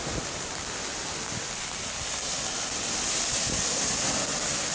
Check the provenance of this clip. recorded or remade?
recorded